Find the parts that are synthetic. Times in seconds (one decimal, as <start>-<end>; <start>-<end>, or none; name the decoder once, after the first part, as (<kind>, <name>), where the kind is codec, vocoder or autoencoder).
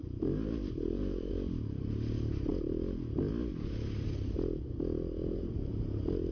0.0-1.3 (vocoder, BigVGAN v2); 5.3-5.8